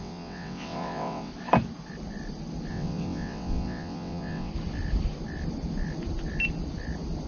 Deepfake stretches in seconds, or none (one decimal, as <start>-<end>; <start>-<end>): 0.0-1.3; 2.7-4.5